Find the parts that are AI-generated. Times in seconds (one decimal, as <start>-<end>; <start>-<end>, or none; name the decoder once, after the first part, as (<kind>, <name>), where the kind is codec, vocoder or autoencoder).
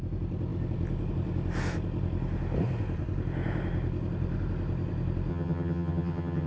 5.3-6.5 (vocoder, HiFi-GAN)